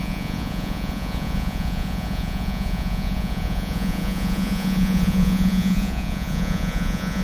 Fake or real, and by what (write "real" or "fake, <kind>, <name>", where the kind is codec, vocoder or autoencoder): fake, vocoder, Vocos